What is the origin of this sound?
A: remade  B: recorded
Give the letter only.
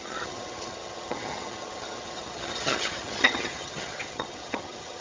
A